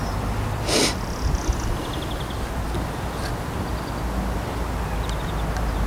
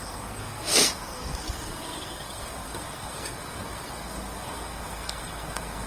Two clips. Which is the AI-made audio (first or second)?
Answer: second